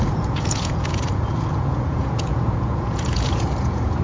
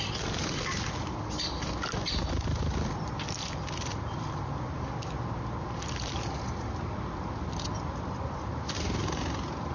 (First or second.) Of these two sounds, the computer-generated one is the first